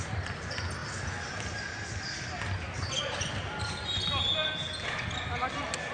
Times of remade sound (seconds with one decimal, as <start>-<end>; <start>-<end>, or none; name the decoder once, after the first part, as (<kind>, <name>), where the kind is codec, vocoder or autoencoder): none